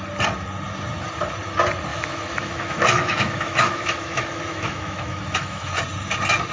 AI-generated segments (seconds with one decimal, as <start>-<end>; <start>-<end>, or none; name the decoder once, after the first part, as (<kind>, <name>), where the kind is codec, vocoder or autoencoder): 1.9-5.8 (autoencoder, DAC-VAE)